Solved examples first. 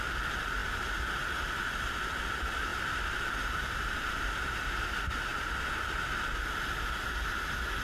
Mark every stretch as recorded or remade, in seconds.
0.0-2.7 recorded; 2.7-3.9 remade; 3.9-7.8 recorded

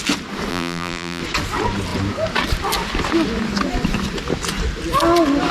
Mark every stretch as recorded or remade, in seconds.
0.0-0.5 recorded; 0.5-1.2 remade; 1.2-5.5 recorded

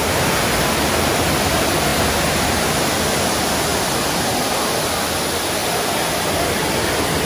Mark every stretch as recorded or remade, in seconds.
0.0-3.7 recorded; 3.7-4.4 remade; 4.4-5.6 recorded; 5.6-6.4 remade; 6.4-7.2 recorded

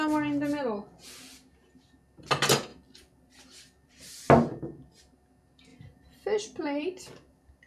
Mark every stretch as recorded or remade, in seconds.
0.0-2.7 recorded; 2.7-4.6 remade; 4.6-5.7 recorded; 5.7-7.7 remade

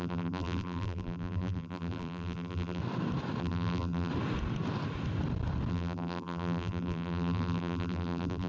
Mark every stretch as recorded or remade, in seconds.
0.0-2.8 remade; 2.8-3.4 recorded; 3.4-4.1 remade; 4.1-5.7 recorded; 5.7-8.5 remade